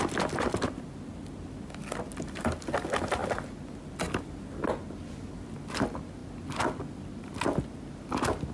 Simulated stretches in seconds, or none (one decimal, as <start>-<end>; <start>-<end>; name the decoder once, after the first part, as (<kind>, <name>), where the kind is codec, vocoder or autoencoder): none